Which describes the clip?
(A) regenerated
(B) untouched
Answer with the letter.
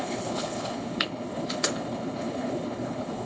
A